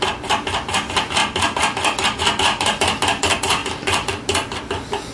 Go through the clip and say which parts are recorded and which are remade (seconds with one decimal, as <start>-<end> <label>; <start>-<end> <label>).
0.0-5.1 recorded